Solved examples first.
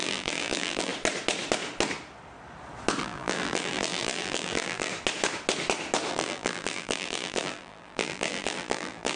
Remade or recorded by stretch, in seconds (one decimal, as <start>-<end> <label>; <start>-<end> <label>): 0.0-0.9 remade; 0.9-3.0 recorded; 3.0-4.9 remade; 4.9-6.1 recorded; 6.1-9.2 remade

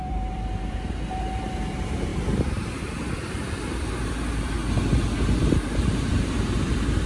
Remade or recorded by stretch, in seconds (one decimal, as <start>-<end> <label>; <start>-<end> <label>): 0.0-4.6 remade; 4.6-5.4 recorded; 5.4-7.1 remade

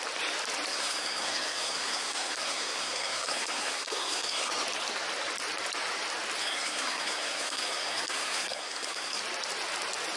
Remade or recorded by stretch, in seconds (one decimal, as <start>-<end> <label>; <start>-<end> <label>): 0.0-0.7 recorded; 0.7-4.5 remade; 4.5-6.4 recorded; 6.4-9.2 remade; 9.2-10.2 recorded

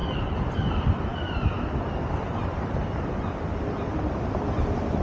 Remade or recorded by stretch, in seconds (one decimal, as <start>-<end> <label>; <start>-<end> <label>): 0.0-5.0 recorded

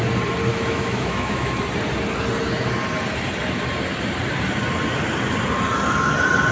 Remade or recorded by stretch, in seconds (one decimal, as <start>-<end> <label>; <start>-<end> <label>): 0.0-0.5 recorded; 0.5-1.6 remade; 1.6-6.5 recorded

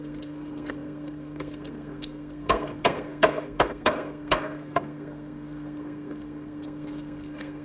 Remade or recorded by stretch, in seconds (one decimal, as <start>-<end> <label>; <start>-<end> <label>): 0.0-7.6 remade

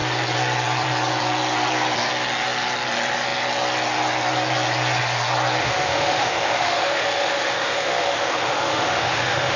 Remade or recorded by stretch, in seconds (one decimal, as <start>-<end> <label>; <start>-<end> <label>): 0.0-5.6 recorded; 5.6-9.6 remade

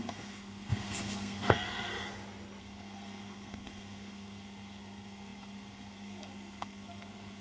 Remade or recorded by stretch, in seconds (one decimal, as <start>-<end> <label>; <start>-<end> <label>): 0.0-1.9 remade; 1.9-2.6 recorded; 2.6-7.4 remade